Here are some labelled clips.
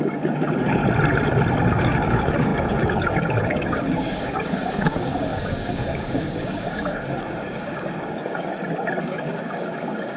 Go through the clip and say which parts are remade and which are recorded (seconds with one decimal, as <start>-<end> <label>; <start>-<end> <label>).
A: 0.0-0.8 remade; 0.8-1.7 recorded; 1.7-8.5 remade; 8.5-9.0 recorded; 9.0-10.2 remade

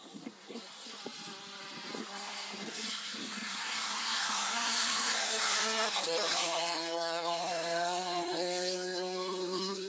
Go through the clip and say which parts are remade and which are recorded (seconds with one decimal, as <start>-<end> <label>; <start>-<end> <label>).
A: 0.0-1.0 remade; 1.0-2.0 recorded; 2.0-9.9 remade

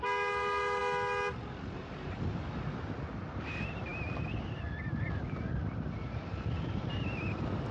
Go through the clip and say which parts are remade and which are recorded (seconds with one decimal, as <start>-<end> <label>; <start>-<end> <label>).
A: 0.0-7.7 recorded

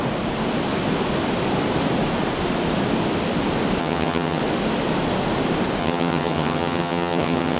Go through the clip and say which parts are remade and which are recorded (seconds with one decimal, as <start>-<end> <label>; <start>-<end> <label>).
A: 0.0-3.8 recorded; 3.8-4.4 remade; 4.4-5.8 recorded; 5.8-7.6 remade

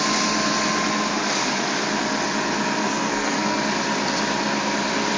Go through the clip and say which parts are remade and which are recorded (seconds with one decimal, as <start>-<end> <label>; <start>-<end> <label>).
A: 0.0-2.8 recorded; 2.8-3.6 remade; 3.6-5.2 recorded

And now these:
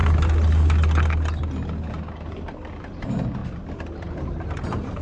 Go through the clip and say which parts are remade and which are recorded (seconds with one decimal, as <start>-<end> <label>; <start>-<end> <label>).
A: 0.0-3.0 recorded; 3.0-3.4 remade; 3.4-4.4 recorded; 4.4-5.0 remade

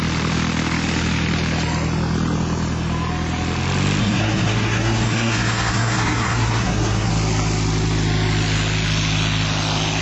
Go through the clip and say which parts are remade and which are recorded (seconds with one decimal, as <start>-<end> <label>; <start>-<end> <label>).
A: 0.0-4.0 recorded; 4.0-7.1 remade; 7.1-10.0 recorded

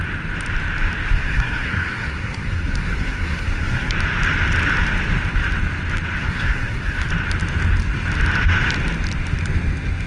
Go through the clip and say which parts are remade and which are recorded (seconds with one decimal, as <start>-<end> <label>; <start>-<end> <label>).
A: 0.0-1.1 recorded; 1.1-3.9 remade; 3.9-6.2 recorded; 6.2-7.1 remade; 7.1-10.1 recorded